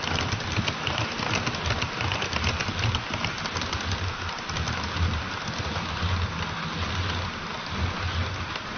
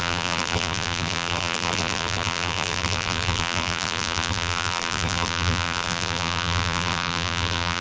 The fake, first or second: second